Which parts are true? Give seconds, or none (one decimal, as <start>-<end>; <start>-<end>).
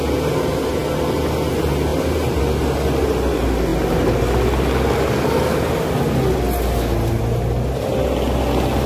0.0-8.9